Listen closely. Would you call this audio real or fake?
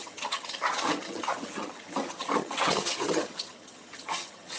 fake